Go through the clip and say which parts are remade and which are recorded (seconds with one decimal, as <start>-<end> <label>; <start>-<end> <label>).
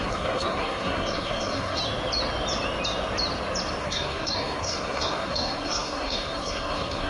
0.0-1.8 remade; 1.8-3.8 recorded; 3.8-7.1 remade